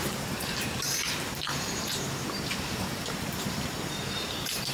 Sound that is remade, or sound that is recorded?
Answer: remade